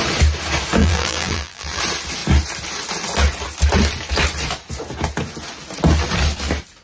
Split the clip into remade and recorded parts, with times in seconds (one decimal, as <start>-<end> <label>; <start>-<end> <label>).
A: 0.0-0.8 recorded; 0.8-1.8 remade; 1.8-6.8 recorded